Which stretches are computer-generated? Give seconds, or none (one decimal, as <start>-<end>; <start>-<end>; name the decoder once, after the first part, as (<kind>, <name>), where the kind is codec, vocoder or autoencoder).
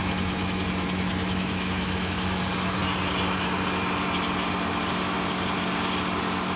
0.0-2.4 (autoencoder, DAC-VAE)